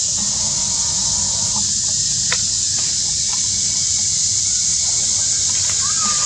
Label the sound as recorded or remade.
recorded